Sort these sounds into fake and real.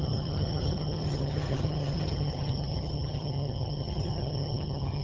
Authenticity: fake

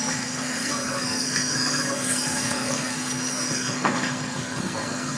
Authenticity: fake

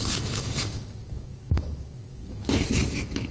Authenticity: fake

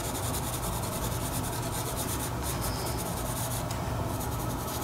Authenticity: real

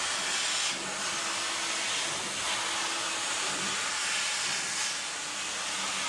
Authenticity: real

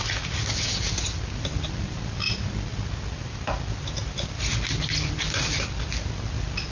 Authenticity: real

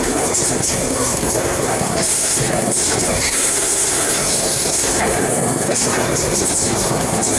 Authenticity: fake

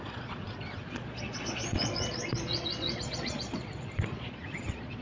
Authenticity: fake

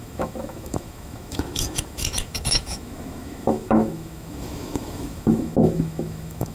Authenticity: fake